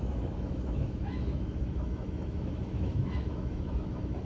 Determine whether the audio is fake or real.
fake